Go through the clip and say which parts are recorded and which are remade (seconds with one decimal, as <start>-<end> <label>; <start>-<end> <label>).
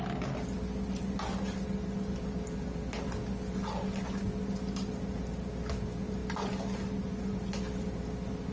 0.0-8.5 recorded